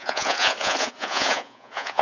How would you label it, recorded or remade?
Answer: remade